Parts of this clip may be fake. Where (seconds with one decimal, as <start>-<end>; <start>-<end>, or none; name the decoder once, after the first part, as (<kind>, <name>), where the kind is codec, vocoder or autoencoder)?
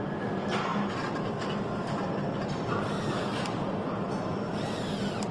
none